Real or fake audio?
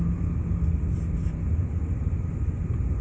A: real